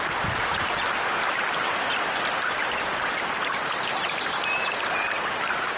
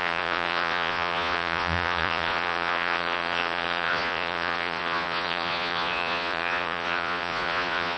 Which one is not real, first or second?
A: second